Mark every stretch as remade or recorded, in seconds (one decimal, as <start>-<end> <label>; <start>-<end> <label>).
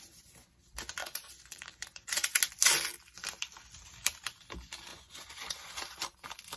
0.0-1.0 recorded; 1.0-2.4 remade; 2.4-4.9 recorded; 4.9-5.7 remade; 5.7-6.6 recorded